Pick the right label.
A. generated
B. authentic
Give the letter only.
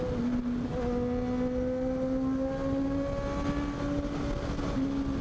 B